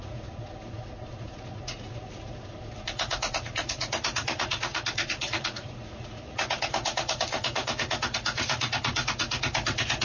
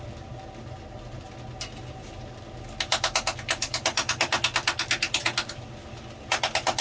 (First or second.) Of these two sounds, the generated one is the first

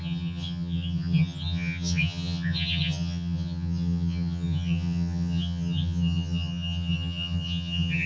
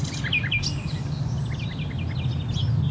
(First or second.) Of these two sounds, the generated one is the first